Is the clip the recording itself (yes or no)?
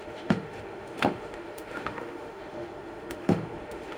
no